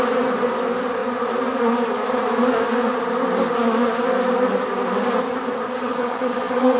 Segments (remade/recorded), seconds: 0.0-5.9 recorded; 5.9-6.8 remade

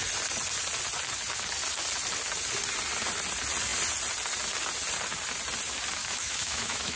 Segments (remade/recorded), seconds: 0.0-6.0 recorded; 6.0-7.0 remade

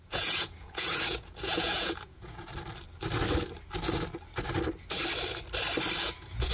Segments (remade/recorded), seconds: 0.0-2.5 remade; 2.5-6.0 recorded; 6.0-6.5 remade

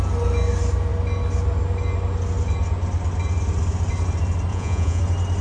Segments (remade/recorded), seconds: 0.0-4.5 recorded; 4.5-5.0 remade; 5.0-5.4 recorded

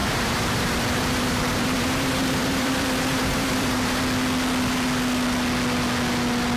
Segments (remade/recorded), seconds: 0.0-4.0 remade; 4.0-6.6 recorded